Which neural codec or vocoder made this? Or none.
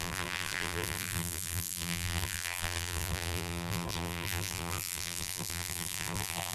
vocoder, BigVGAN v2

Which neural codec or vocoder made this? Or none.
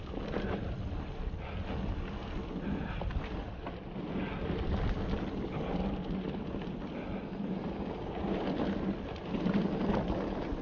none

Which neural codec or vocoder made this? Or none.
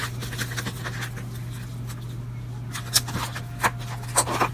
none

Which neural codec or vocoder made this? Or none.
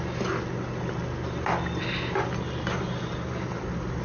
none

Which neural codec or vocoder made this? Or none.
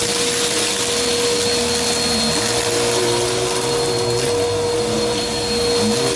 none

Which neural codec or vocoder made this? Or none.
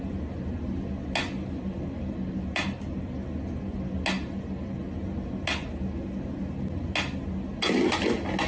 none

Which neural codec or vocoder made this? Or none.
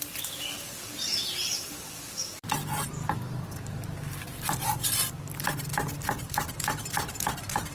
none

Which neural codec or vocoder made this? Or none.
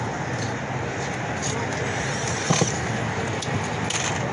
none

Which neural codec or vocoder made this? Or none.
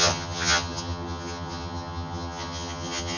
vocoder, HiFi-GAN